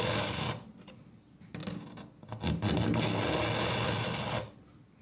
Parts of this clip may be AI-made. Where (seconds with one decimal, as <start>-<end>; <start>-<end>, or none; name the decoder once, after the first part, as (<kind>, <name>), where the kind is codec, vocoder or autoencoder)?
none

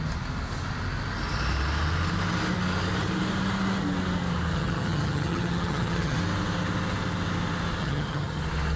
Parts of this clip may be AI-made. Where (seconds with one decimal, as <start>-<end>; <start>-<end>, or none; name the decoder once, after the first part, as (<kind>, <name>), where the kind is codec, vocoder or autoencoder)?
4.5-6.2 (vocoder, HiFi-GAN); 7.8-8.4

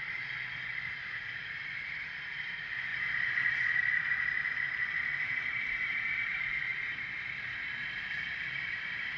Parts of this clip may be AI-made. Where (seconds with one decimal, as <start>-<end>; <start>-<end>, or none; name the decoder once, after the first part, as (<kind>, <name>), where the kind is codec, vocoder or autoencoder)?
0.0-9.2 (vocoder, BigVGAN v2)